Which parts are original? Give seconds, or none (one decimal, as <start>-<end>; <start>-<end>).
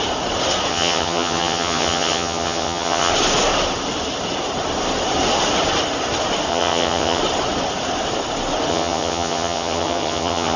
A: 0.0-0.7; 3.1-6.5; 7.2-8.7